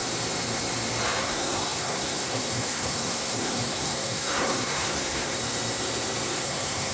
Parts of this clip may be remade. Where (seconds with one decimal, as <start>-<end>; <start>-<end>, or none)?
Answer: 1.2-5.4; 6.3-6.9